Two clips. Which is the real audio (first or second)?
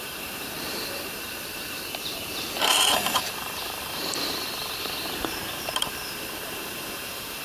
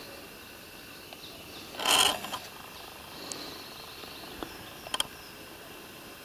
second